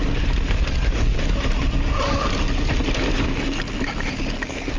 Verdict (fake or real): real